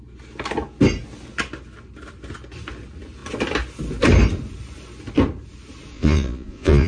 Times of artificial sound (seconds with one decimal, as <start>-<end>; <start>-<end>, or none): 5.9-6.9